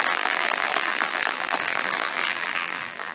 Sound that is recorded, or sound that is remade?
remade